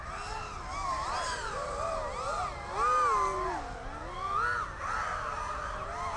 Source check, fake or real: real